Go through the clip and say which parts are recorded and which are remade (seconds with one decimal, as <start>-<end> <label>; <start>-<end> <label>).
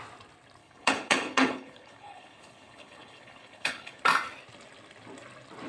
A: 0.0-0.6 recorded; 0.6-4.0 remade; 4.0-5.7 recorded